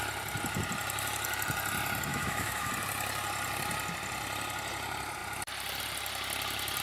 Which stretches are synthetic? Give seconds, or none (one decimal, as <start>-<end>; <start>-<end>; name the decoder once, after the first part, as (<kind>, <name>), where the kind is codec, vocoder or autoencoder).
2.1-2.7 (autoencoder, DAC-VAE)